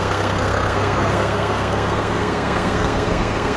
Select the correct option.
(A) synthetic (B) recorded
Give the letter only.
A